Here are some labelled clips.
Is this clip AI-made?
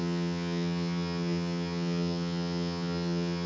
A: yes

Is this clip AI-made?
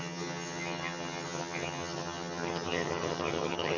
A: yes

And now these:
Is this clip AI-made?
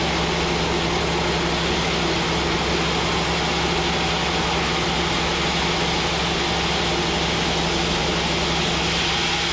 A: no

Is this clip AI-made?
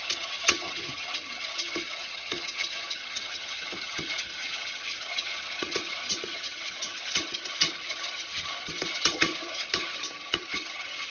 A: yes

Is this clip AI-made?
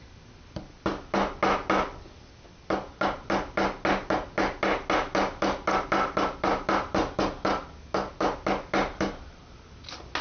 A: no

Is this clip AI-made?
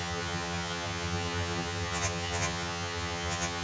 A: yes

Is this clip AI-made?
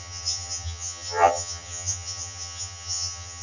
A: yes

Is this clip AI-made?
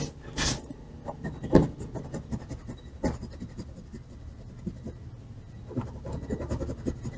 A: no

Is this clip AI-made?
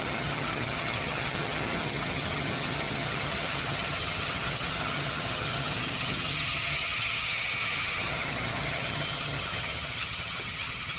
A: yes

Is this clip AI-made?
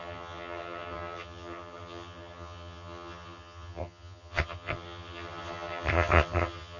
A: yes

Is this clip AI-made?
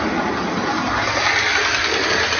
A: no